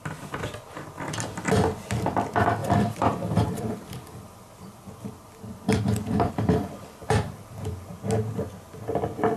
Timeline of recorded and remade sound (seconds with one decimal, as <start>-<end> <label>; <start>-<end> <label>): 0.0-2.6 recorded; 2.6-6.3 remade; 6.3-7.0 recorded; 7.0-7.9 remade; 7.9-9.4 recorded